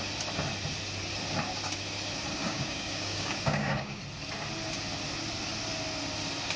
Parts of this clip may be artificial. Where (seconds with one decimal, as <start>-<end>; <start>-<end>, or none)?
2.4-4.0